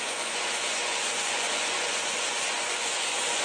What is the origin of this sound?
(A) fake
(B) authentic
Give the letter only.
A